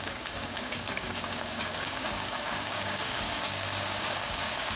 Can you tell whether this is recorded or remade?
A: remade